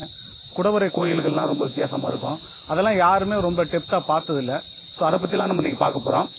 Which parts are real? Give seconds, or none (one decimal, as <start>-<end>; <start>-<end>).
0.0-0.9; 2.3-5.1